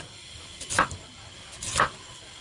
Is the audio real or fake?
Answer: real